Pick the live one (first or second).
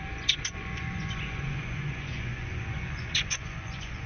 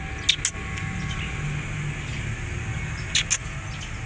second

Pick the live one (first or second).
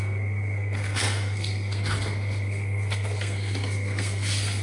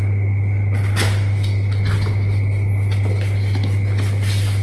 second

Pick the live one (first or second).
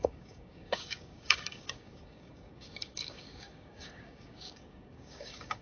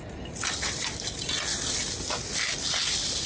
second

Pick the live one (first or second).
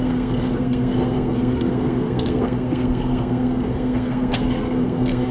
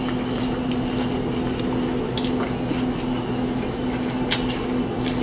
second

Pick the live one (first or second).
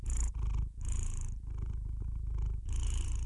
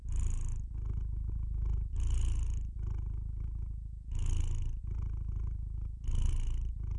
second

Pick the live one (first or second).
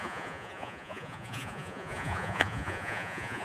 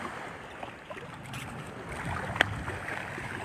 second